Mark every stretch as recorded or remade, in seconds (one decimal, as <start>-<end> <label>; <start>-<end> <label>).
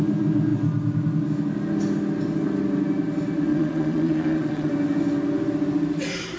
0.0-3.5 recorded; 3.5-4.7 remade; 4.7-6.4 recorded